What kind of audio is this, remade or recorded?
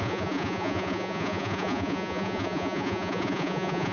remade